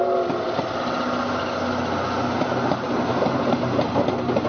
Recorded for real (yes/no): yes